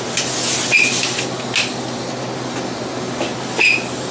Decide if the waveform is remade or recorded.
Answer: recorded